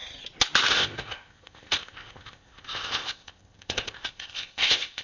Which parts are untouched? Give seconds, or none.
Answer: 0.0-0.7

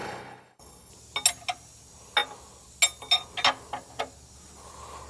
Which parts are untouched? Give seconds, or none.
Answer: 0.9-5.1